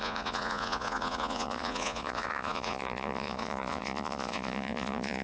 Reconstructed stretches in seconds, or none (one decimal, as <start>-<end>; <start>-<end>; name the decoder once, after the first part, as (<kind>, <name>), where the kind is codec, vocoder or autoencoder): 0.0-5.2 (vocoder, Vocos)